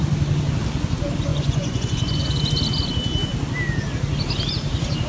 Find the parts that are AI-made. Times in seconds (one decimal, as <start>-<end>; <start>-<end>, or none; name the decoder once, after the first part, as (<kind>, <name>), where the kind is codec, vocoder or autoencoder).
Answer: 1.3-2.4 (vocoder, Vocos)

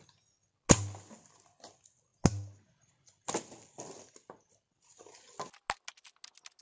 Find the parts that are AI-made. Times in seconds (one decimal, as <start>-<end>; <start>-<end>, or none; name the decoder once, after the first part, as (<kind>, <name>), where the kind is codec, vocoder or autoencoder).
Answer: none

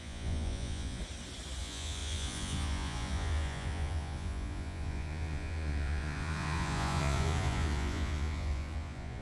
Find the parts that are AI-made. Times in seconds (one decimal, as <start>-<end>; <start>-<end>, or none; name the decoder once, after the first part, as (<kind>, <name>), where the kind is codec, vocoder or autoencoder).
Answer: 0.0-1.0 (vocoder, Vocos); 1.6-9.2

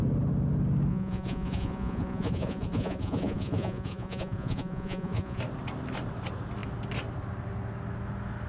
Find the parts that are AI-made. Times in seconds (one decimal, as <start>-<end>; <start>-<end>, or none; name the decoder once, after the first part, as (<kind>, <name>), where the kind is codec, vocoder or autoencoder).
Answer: 0.9-5.4 (vocoder, Vocos)

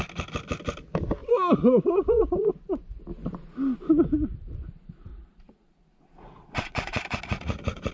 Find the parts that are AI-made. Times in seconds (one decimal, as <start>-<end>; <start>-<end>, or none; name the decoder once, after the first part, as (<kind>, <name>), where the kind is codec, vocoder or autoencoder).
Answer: 1.2-2.5 (vocoder, Vocos); 5.1-7.9

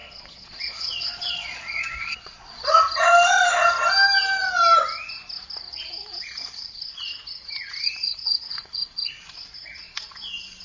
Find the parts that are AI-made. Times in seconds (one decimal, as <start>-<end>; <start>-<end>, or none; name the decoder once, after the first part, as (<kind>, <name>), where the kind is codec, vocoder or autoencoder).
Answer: 0.0-3.1 (vocoder, Vocos); 5.7-7.1; 7.8-10.6

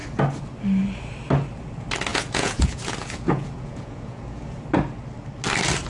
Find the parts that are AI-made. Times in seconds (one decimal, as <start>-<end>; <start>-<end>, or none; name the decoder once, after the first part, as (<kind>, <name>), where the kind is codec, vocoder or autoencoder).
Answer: 2.1-4.6 (vocoder, Vocos)

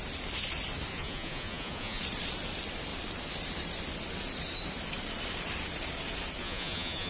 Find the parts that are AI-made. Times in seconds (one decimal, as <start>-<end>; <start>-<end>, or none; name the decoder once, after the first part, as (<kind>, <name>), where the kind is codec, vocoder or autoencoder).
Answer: 0.9-2.0 (vocoder, Vocos); 6.4-7.1